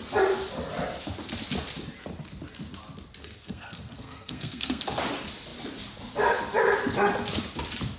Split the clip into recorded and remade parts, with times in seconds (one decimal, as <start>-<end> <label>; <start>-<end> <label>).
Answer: 0.0-3.2 recorded; 3.2-4.8 remade; 4.8-8.0 recorded